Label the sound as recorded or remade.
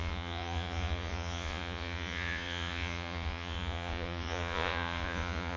remade